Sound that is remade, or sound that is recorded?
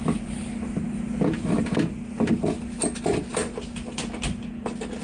recorded